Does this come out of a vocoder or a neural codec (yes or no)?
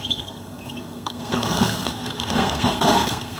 yes